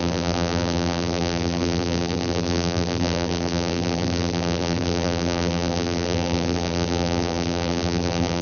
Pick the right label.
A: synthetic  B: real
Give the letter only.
A